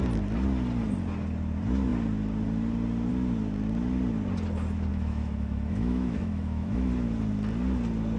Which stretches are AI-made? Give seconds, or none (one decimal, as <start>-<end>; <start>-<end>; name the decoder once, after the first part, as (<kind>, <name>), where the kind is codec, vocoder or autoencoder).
4.9-6.9 (autoencoder, DAC-VAE)

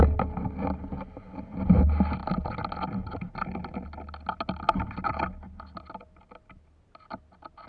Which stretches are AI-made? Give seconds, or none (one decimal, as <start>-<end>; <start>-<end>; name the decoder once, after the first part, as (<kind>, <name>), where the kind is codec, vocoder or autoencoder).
none

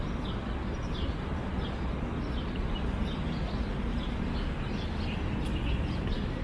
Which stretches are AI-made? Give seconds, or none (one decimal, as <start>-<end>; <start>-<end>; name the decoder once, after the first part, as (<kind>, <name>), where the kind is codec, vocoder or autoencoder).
none

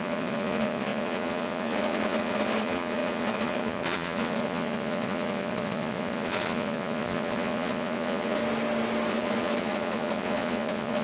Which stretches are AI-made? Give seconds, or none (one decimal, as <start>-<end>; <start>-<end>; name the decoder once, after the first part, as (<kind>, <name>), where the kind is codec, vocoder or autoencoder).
0.0-8.4 (vocoder, Vocos); 9.1-11.0

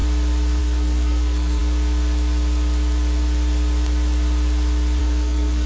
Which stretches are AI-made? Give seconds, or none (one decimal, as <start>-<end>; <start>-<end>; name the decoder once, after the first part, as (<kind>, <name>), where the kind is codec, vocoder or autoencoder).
0.6-1.6 (codec, SNAC); 5.0-5.7

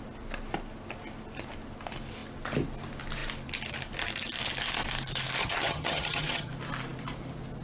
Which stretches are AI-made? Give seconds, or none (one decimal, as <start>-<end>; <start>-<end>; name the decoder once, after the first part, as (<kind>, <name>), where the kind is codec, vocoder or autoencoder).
5.4-6.5 (vocoder, HiFi-GAN)